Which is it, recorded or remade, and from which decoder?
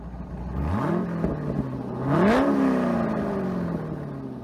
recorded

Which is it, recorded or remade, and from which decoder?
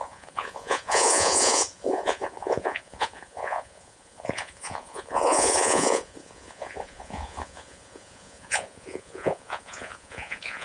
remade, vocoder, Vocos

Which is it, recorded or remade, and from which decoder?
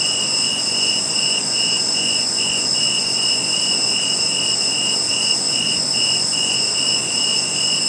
remade, vocoder, Vocos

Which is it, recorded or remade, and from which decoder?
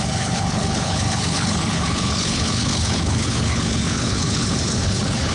remade, codec, HILCodec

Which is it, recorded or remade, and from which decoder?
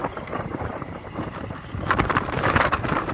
remade, vocoder, BigVGAN v2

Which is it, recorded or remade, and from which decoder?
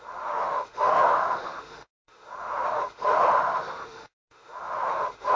remade, autoencoder, DAC-VAE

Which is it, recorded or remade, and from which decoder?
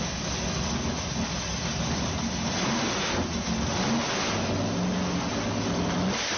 recorded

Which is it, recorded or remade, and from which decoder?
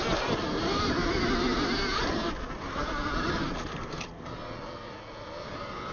recorded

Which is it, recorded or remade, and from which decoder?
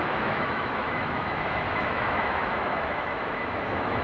remade, autoencoder, DAC-VAE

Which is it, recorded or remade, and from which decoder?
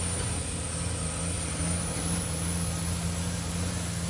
recorded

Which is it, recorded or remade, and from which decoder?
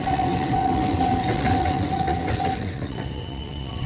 remade, vocoder, WaveNeXt